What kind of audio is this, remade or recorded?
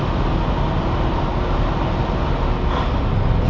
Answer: recorded